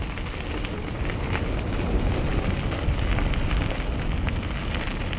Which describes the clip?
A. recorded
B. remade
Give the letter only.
A